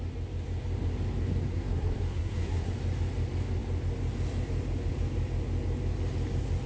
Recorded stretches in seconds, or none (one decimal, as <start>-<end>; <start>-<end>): 0.0-1.5; 2.7-6.7